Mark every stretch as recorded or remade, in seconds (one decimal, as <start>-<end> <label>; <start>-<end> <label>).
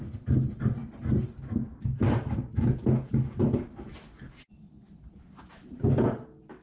0.0-6.6 recorded